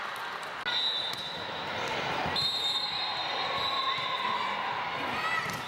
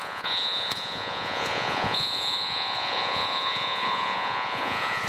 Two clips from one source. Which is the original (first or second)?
first